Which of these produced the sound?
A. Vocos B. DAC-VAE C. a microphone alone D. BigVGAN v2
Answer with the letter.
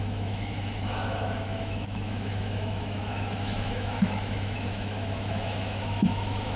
B